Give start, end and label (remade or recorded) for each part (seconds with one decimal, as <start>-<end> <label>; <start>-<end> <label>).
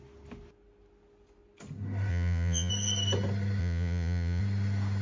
0.0-2.1 recorded; 2.1-2.7 remade; 2.7-3.6 recorded; 3.6-4.4 remade; 4.4-5.0 recorded